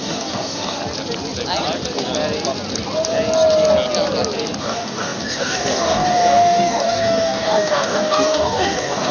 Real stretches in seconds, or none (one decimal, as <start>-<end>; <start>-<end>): 0.8-4.6